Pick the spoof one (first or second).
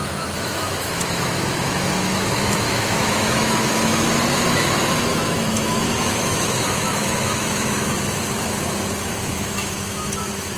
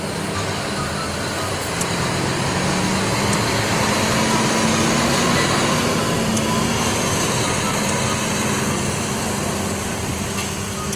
first